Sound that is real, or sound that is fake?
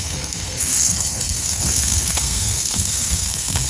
fake